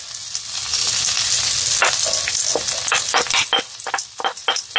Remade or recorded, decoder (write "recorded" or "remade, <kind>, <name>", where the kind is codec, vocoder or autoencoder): recorded